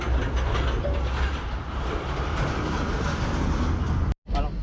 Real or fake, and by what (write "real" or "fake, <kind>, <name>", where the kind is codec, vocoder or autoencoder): real